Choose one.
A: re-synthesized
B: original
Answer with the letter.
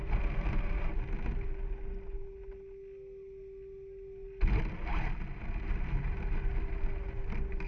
B